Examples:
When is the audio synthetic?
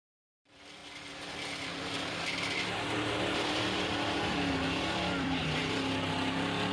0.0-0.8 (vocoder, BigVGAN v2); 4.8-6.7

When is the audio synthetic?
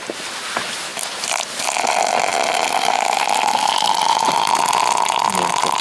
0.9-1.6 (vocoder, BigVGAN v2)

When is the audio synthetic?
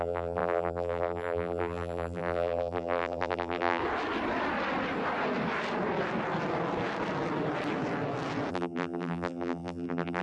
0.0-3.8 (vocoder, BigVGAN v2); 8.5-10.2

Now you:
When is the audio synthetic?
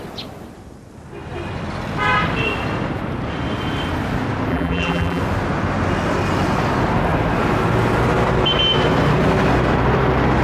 4.5-5.2 (vocoder, BigVGAN v2)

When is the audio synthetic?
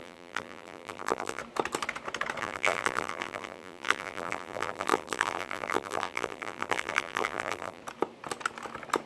0.0-1.4 (vocoder, BigVGAN v2); 2.4-7.8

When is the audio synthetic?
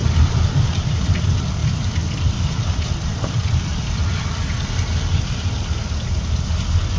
0.0-4.4 (vocoder, BigVGAN v2)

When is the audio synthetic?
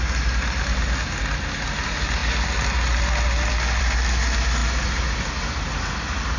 none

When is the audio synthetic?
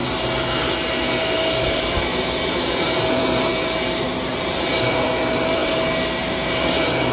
1.7-5.6 (vocoder, BigVGAN v2); 6.5-7.1